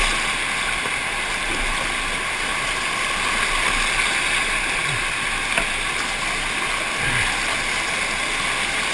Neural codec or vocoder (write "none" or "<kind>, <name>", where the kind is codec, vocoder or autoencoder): none